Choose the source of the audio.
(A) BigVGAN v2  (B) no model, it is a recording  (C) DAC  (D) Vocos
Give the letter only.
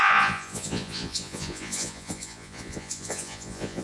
D